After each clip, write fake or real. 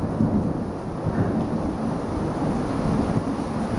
real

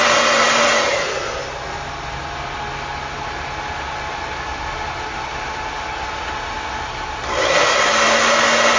real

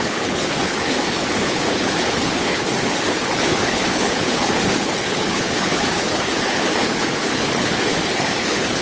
fake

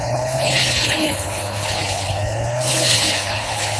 fake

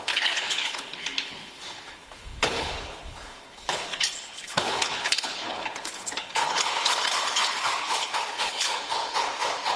fake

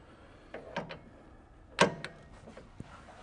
real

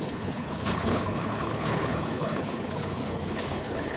fake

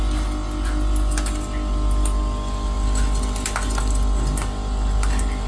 real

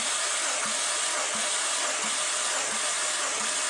real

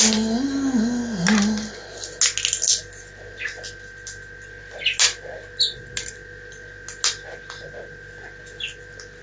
real